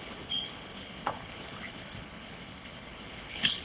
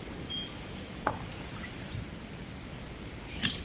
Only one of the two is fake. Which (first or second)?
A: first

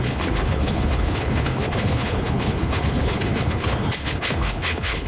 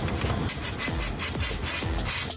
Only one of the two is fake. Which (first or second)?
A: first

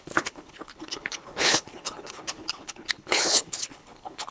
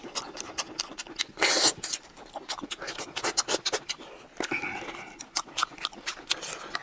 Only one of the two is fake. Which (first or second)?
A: first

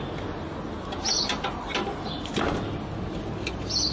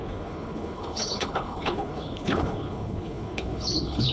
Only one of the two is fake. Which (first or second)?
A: second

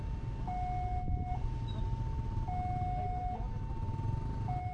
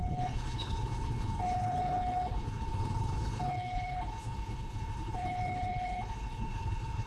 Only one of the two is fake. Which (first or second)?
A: second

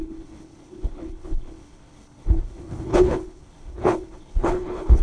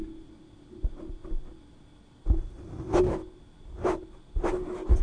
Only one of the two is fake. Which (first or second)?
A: first